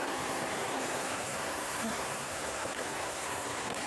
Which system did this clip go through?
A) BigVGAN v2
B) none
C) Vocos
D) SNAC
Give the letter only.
D